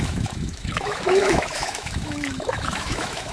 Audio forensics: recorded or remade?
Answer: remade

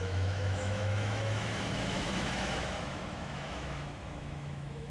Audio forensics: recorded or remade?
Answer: remade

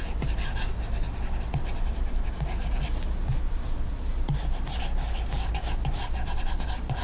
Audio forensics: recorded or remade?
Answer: recorded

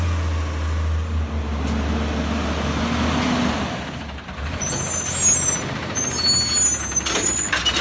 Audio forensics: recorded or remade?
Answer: recorded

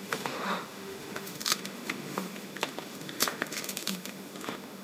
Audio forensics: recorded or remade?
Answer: remade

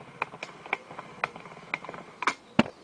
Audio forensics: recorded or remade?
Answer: recorded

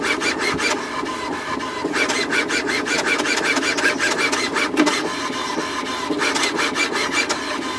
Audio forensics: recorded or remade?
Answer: recorded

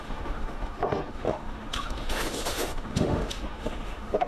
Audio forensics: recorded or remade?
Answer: remade